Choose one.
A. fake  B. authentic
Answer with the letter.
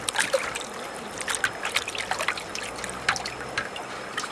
B